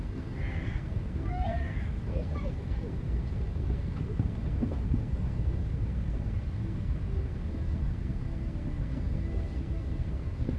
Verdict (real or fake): fake